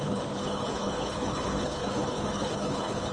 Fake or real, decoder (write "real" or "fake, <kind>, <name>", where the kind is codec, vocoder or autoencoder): fake, codec, HILCodec